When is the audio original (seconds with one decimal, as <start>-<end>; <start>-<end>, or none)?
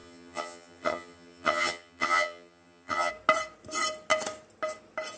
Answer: 3.1-5.2